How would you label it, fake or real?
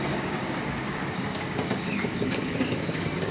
fake